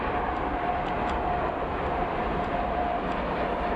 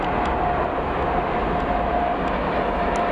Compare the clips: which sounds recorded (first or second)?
second